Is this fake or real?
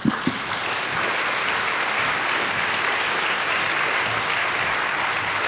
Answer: real